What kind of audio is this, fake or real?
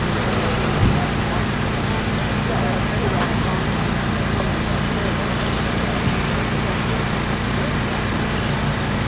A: real